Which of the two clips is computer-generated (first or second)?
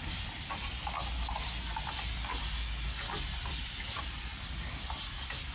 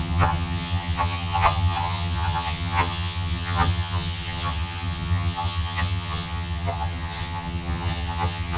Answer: second